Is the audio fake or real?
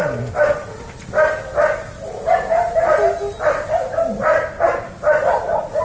real